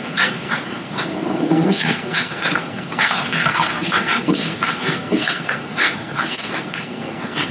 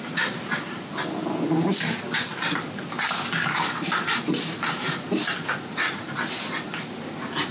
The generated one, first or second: first